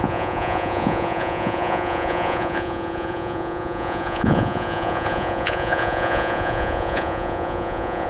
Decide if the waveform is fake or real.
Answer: fake